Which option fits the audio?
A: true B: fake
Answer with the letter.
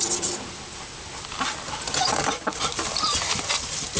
A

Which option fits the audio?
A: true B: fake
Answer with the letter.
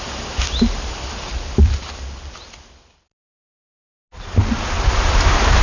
A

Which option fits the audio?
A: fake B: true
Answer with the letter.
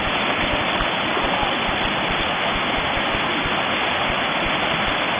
B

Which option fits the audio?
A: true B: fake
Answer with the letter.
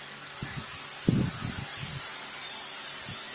A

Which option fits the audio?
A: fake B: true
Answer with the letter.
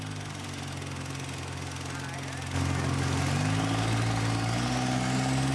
B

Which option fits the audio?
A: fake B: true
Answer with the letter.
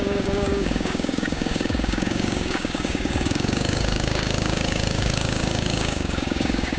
A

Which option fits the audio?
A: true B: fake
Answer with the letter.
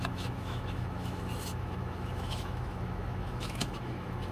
B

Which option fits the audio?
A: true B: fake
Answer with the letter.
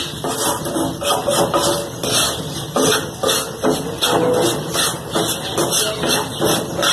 A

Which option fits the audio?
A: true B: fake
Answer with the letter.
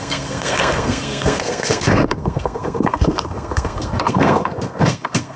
B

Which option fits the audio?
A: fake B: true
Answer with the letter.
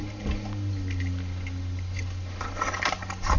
B